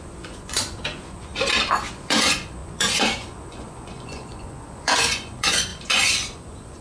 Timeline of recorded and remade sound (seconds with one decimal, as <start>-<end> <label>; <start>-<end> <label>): 0.0-1.3 remade; 1.3-1.9 recorded; 1.9-6.8 remade